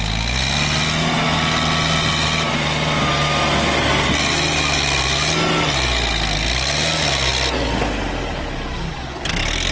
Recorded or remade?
recorded